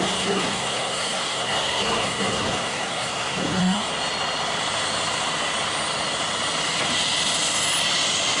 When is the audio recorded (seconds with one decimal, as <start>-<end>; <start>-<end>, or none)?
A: 3.9-8.4